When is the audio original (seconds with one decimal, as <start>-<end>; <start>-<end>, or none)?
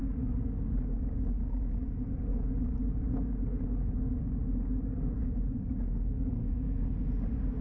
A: 1.6-2.3; 6.9-7.6